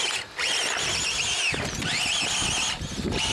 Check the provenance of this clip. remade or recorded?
recorded